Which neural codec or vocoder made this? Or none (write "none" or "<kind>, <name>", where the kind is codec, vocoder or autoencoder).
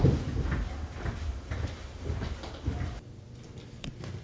none